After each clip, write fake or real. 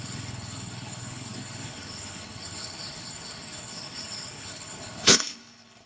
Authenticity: fake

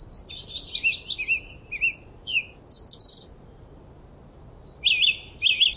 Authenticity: real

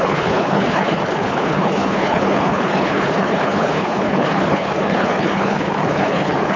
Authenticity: fake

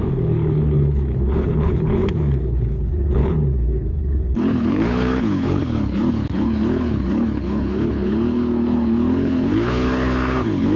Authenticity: fake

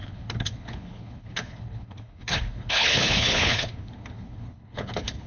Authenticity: fake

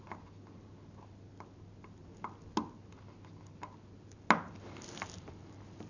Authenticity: real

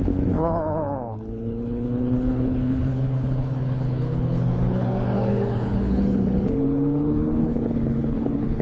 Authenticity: fake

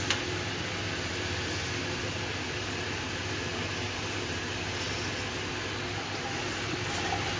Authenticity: real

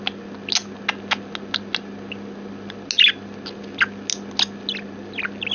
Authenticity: real